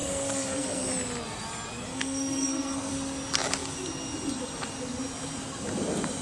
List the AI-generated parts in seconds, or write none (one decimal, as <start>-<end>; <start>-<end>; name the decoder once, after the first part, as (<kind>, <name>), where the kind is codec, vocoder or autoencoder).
0.0-0.9 (codec, SNAC); 1.9-2.9